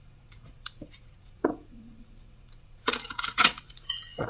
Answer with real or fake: fake